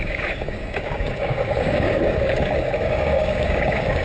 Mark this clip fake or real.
fake